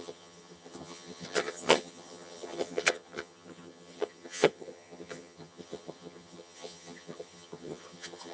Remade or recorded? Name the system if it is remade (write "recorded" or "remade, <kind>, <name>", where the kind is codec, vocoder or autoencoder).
remade, vocoder, HiFi-GAN